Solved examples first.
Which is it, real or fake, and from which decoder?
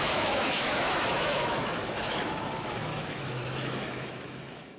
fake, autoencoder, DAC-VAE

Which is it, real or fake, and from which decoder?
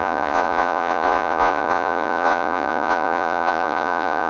fake, vocoder, Vocos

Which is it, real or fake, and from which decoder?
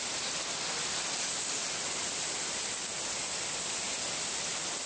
real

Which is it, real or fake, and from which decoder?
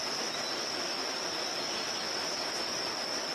real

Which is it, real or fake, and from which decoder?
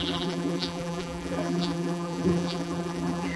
fake, vocoder, BigVGAN v2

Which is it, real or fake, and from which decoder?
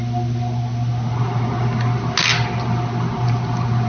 real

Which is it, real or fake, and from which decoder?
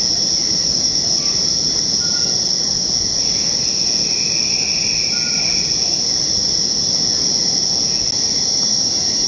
real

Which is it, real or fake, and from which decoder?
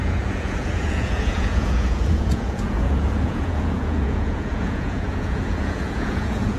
fake, vocoder, Vocos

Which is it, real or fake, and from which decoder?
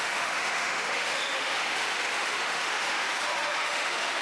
fake, autoencoder, DAC-VAE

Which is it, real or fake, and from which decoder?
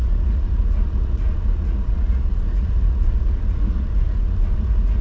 fake, vocoder, Vocos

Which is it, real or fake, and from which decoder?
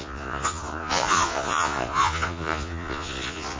fake, vocoder, Vocos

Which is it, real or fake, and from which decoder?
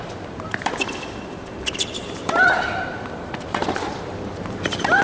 fake, vocoder, BigVGAN v2